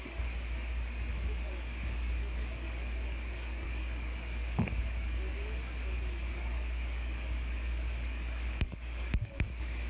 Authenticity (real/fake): fake